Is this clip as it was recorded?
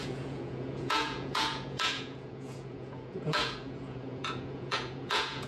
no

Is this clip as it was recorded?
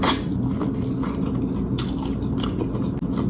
yes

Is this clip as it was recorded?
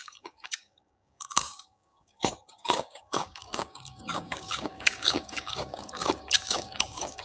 no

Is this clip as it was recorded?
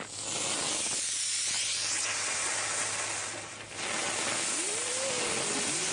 yes